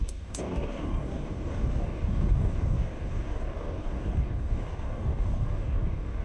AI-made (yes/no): yes